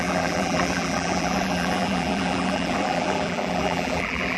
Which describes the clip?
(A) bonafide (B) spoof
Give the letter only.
B